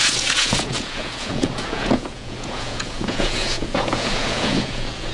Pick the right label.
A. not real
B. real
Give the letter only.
A